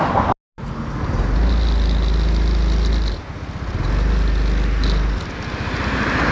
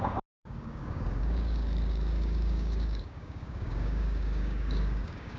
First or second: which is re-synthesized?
second